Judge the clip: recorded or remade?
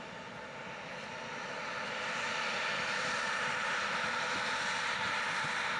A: recorded